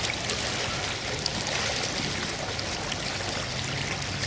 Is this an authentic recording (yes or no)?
yes